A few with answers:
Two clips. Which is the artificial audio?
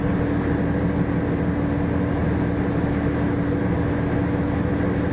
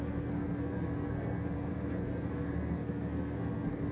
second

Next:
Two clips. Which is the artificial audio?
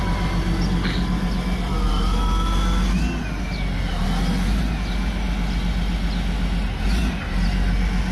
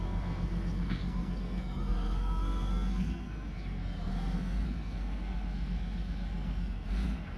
second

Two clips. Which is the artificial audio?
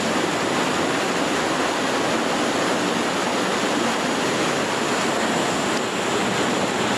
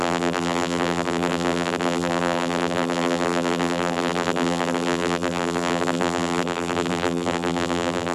second